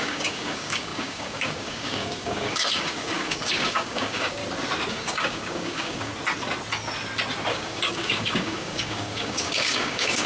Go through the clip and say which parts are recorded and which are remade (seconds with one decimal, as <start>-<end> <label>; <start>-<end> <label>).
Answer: 0.0-4.4 remade; 4.4-4.9 recorded; 4.9-6.1 remade; 6.1-7.5 recorded; 7.5-10.3 remade